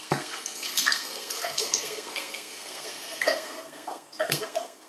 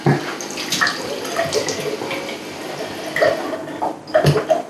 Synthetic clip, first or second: first